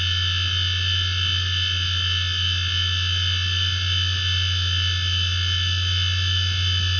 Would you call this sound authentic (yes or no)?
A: yes